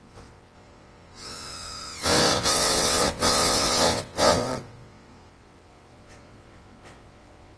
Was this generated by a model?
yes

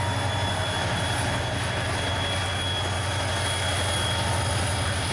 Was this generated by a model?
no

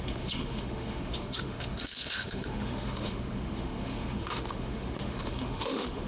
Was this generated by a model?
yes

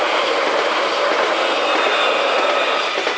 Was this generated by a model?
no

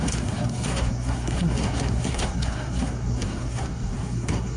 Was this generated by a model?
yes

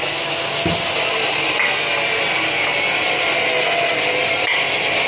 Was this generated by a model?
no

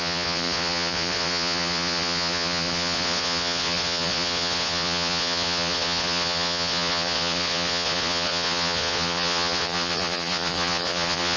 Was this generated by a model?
yes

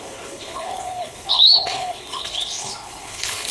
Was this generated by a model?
yes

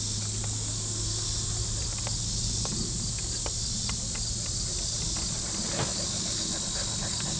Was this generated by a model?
no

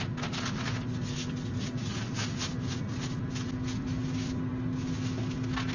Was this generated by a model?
no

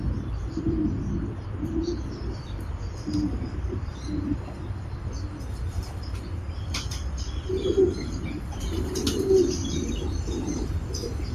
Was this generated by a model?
yes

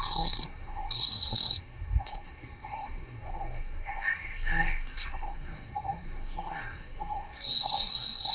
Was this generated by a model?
yes